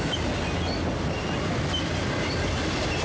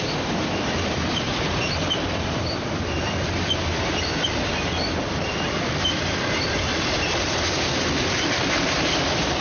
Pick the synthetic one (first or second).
second